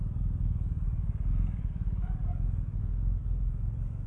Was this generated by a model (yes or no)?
yes